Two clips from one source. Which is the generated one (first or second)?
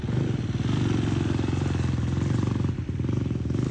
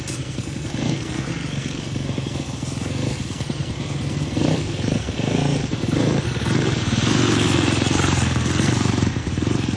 second